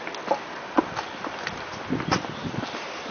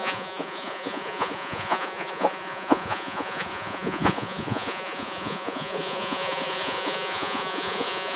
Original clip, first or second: first